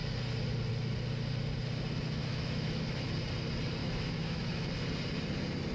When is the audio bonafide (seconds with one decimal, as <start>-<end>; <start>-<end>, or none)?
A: 0.0-2.2; 3.1-3.8; 4.7-5.7